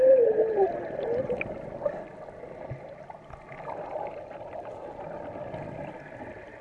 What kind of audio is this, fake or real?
real